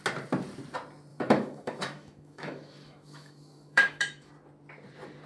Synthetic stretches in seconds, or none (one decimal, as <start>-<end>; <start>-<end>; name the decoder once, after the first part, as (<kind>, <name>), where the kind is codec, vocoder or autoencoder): 1.1-4.3 (autoencoder, DAC-VAE)